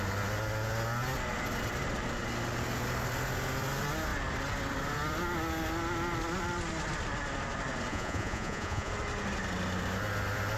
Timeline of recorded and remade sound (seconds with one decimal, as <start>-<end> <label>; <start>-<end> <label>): 0.0-7.9 recorded; 7.9-8.9 remade; 8.9-10.6 recorded